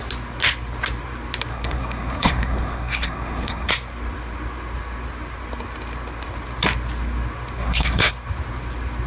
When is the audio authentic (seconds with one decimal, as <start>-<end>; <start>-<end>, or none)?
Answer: 0.0-1.5; 3.7-7.6; 8.1-9.1